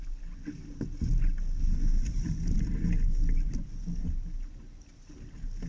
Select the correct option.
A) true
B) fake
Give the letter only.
A